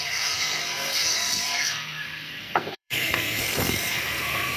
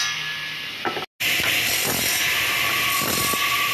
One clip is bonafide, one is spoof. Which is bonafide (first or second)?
second